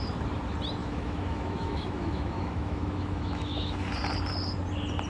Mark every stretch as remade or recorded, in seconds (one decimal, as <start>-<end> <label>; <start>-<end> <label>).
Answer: 0.0-0.8 recorded; 0.8-3.9 remade; 3.9-5.1 recorded